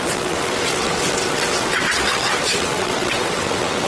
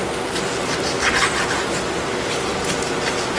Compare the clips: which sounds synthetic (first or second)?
first